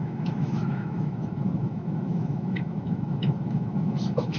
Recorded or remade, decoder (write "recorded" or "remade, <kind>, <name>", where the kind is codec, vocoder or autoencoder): remade, autoencoder, DAC-VAE